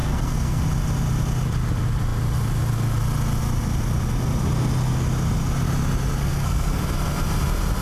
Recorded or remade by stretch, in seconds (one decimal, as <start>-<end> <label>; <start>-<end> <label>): 0.0-0.6 remade; 0.6-6.2 recorded; 6.2-6.8 remade; 6.8-7.8 recorded

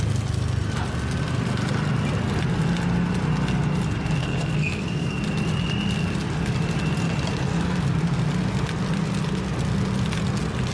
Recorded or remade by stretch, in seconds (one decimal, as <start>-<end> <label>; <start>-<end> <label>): 0.0-4.2 recorded; 4.2-5.2 remade; 5.2-10.7 recorded

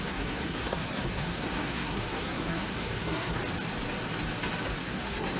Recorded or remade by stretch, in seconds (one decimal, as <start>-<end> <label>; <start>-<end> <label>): 0.0-3.4 remade; 3.4-4.8 recorded; 4.8-5.4 remade

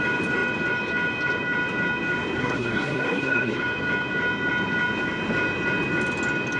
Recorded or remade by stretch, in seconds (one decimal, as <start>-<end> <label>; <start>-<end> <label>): 0.0-2.4 recorded; 2.4-3.6 remade; 3.6-6.6 recorded

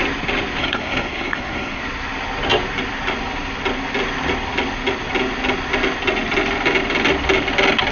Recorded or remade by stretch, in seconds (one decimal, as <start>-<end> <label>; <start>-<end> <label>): 0.0-0.6 recorded; 0.6-1.8 remade; 1.8-7.9 recorded

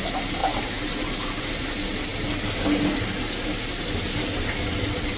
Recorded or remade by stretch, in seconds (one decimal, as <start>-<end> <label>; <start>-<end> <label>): 0.0-5.2 recorded

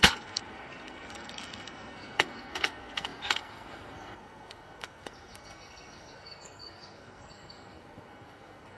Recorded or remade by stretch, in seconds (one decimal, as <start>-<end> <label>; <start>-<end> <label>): 0.0-8.8 remade

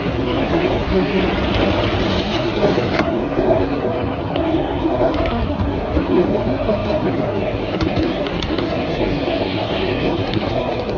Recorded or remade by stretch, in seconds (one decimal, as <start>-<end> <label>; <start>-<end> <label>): 0.0-1.2 remade; 1.2-2.2 recorded; 2.2-11.0 remade